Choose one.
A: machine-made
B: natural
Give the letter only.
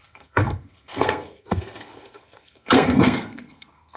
A